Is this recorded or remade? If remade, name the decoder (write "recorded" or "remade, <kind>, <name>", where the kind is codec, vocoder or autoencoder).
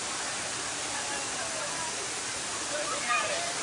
recorded